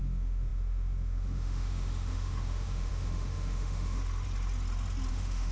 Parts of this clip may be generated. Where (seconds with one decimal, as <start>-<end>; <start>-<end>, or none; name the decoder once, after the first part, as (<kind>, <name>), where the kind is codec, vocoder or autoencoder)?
0.0-4.0 (autoencoder, DAC-VAE); 5.1-5.5